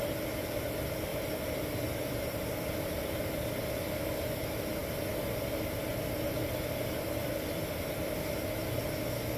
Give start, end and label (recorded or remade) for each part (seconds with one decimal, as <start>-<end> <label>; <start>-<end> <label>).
0.0-1.1 recorded; 1.1-4.0 remade; 4.0-7.2 recorded; 7.2-8.3 remade; 8.3-9.4 recorded